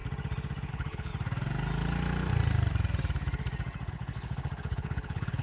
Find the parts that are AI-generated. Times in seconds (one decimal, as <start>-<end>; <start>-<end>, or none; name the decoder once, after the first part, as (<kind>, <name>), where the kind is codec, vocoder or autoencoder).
0.7-1.1 (codec, HILCodec); 3.9-5.4